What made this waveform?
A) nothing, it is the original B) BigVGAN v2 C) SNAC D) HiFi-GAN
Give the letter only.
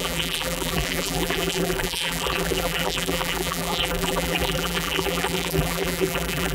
B